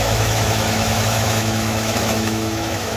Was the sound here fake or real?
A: fake